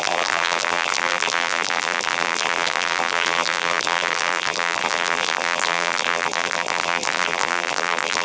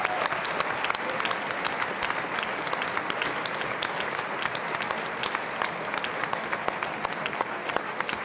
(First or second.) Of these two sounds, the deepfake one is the first